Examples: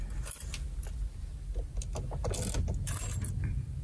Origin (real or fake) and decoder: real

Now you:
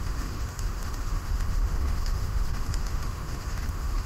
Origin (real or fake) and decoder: fake, autoencoder, DAC-VAE